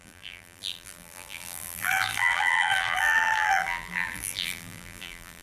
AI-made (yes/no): yes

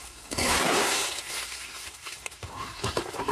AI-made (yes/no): yes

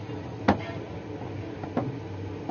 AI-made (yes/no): no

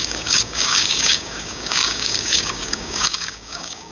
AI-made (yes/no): yes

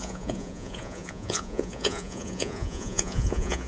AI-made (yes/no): yes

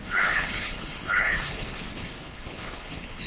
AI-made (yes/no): yes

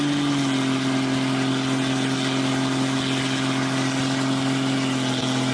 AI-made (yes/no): no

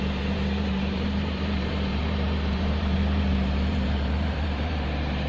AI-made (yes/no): yes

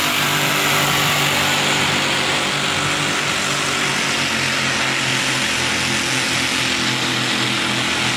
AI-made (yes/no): no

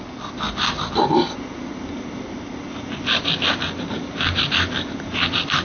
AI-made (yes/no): no